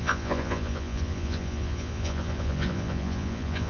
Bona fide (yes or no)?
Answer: no